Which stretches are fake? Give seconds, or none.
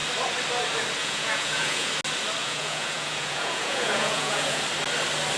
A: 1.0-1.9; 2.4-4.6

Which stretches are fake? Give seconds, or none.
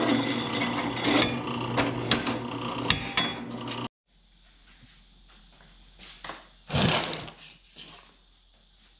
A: none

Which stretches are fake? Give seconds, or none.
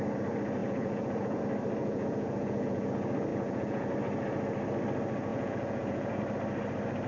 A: 0.6-1.4; 1.8-2.9; 3.3-3.9; 5.3-6.2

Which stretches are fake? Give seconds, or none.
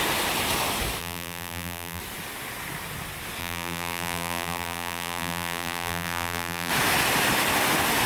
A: 1.0-2.0; 3.4-6.7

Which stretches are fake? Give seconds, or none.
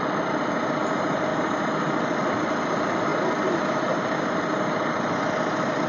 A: none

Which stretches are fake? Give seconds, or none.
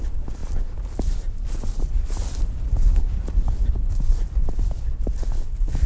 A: none